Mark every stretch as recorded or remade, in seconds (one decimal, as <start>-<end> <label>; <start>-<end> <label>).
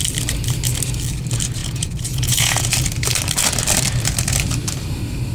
0.0-1.6 recorded; 1.6-2.7 remade; 2.7-5.3 recorded